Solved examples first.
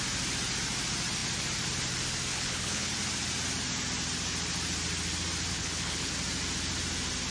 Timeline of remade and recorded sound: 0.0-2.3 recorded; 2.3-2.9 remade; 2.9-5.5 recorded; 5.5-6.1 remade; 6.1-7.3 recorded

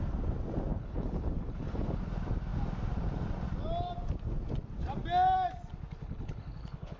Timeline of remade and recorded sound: 0.0-0.8 recorded; 0.8-2.0 remade; 2.0-6.0 recorded; 6.0-7.0 remade